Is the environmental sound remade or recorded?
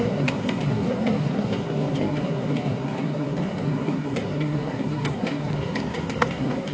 remade